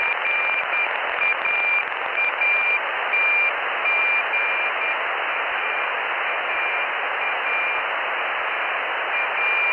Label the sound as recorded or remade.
recorded